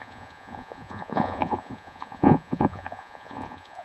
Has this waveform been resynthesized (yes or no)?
yes